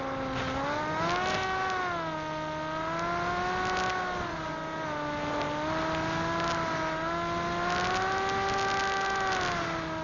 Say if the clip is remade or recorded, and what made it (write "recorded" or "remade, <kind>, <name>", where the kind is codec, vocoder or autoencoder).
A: recorded